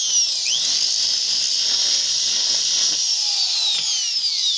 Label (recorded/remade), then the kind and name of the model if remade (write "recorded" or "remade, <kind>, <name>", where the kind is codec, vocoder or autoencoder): recorded